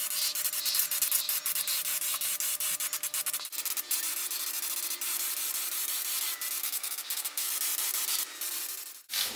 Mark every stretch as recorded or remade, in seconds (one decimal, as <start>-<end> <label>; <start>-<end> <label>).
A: 0.0-6.6 recorded; 6.6-7.5 remade; 7.5-9.4 recorded